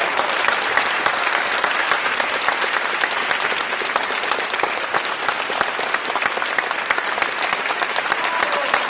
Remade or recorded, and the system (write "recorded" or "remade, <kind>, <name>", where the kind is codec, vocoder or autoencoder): recorded